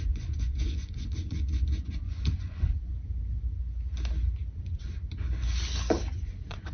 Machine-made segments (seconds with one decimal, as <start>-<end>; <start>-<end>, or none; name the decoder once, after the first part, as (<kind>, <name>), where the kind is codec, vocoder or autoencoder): 0.0-2.9 (vocoder, Vocos); 6.0-6.7